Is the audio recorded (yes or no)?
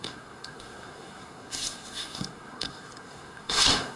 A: no